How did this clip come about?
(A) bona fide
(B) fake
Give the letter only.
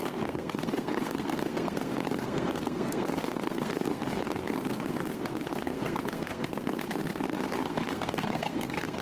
B